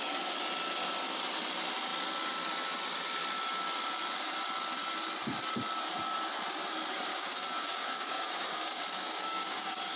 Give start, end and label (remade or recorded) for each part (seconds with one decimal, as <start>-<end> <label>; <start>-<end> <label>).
0.0-7.1 recorded; 7.1-10.0 remade